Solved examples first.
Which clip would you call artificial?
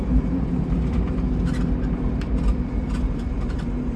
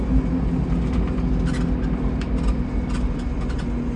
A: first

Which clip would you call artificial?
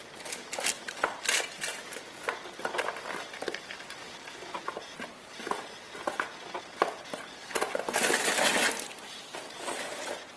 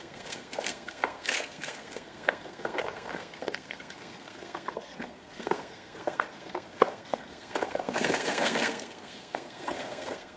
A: second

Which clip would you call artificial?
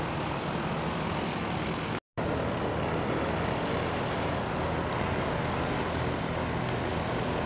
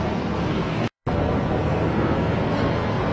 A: second